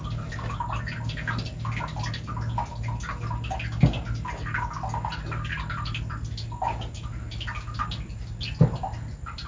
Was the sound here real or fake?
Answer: real